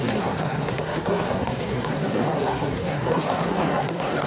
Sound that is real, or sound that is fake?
fake